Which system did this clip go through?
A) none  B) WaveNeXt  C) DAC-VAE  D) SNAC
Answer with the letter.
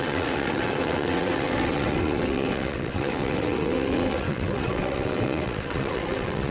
B